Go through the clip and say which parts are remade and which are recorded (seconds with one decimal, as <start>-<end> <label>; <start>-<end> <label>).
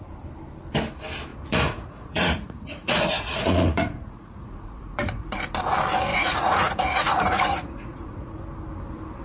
0.0-1.3 recorded; 1.3-5.4 remade; 5.4-6.1 recorded; 6.1-8.4 remade; 8.4-9.2 recorded